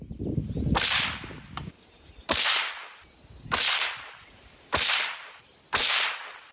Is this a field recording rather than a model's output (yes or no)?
yes